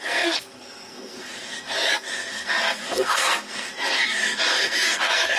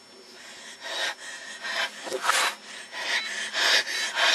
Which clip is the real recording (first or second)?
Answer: second